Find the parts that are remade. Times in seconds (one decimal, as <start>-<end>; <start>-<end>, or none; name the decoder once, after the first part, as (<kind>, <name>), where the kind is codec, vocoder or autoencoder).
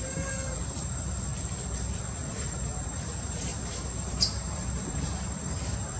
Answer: 0.0-1.3 (vocoder, BigVGAN v2); 2.3-6.0